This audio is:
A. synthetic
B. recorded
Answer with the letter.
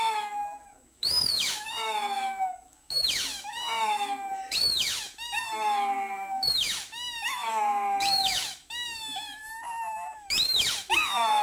A